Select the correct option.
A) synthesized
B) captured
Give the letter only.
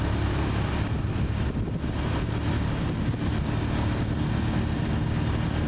B